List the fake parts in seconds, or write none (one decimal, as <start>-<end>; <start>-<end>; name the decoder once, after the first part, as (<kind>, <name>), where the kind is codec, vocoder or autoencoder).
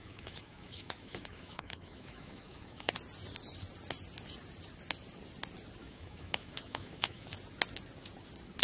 0.0-2.9 (autoencoder, DAC-VAE); 5.8-7.3